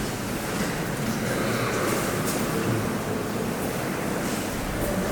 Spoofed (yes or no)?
no